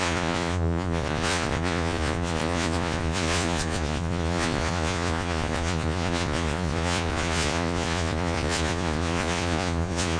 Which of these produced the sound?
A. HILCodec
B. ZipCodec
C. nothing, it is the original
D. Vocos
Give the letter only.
D